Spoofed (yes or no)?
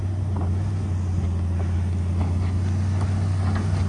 no